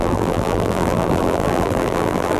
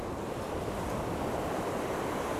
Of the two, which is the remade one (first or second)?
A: first